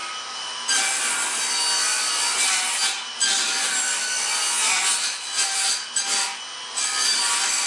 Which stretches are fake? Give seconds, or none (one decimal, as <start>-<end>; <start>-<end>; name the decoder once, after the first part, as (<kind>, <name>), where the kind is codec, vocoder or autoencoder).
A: none